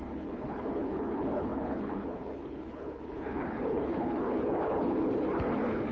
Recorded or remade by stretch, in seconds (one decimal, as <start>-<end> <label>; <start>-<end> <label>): 0.0-5.9 remade